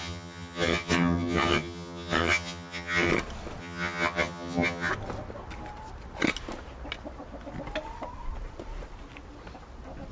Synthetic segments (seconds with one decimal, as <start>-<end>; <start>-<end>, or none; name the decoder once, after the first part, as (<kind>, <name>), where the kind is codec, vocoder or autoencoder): 0.0-3.1 (vocoder, HiFi-GAN); 3.6-4.9